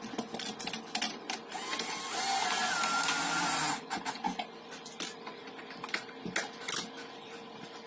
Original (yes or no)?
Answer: yes